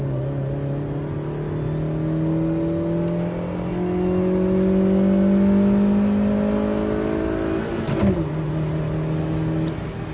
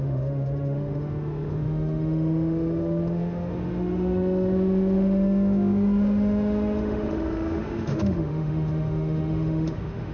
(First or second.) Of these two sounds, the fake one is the second